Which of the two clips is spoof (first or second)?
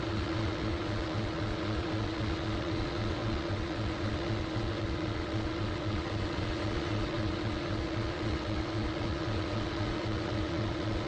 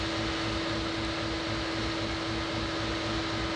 first